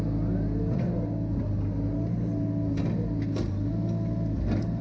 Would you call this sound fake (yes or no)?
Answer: no